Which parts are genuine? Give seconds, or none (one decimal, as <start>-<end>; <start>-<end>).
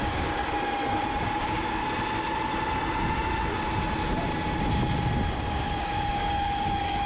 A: 0.4-1.3; 1.8-5.4